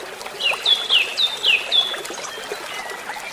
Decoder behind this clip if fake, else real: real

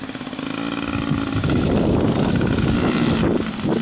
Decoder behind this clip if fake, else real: real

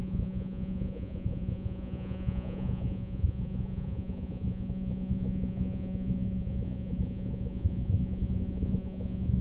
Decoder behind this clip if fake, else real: fake, vocoder, Vocos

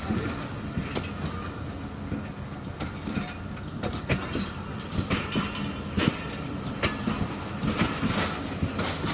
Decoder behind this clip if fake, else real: real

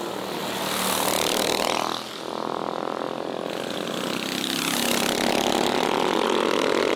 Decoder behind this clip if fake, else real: real